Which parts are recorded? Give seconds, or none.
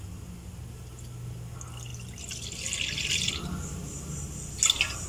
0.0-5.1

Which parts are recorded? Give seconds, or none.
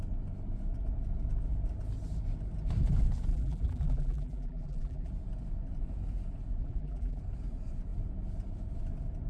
0.0-3.3; 5.1-6.6; 7.2-9.3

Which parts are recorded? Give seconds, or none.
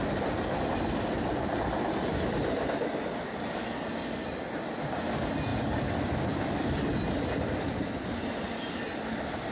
0.0-5.5; 6.8-9.5